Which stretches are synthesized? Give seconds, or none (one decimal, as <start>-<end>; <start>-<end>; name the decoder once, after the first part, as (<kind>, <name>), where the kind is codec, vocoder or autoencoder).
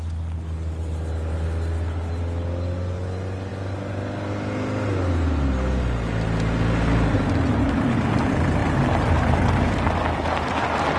none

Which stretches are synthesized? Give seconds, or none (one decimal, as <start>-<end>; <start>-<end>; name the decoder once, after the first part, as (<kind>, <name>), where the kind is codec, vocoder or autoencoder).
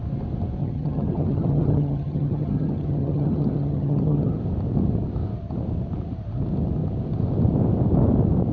0.6-4.4 (vocoder, HiFi-GAN)